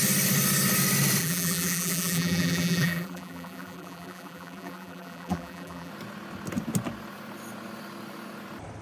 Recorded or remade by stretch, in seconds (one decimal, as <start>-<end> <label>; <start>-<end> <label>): 0.0-1.2 recorded; 1.2-5.9 remade; 5.9-8.8 recorded